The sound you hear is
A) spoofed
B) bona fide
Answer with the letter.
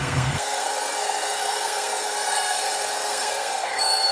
A